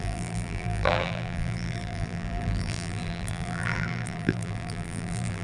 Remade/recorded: remade